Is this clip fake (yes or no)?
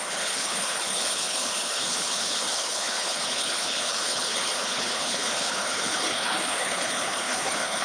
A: yes